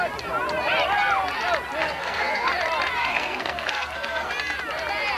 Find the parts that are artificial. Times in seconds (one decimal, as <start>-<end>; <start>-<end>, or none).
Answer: 1.8-2.5; 3.0-4.3